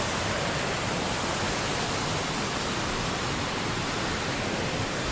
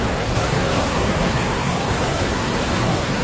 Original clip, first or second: first